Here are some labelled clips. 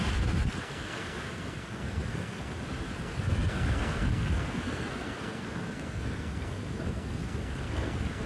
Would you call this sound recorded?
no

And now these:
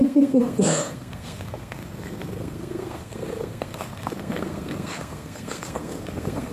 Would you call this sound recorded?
no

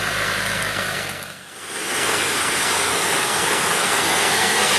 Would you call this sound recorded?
no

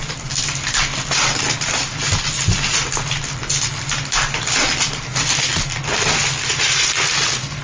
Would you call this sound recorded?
yes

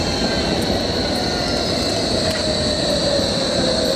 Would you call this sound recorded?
yes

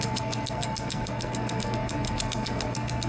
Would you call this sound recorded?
no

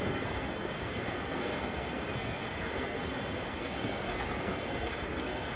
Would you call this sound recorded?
no